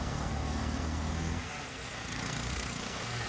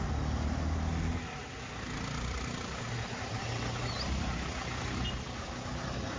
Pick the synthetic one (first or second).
first